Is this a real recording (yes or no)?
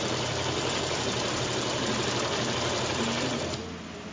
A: yes